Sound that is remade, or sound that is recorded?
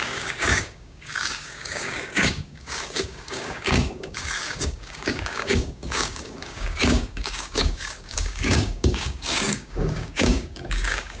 remade